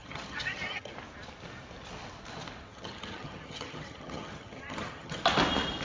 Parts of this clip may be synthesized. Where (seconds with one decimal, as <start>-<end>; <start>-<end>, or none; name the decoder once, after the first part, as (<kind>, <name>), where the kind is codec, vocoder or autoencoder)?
0.0-0.9 (vocoder, HiFi-GAN); 2.7-5.2